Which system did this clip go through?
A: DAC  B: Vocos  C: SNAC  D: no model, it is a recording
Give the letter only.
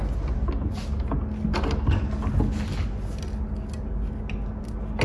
D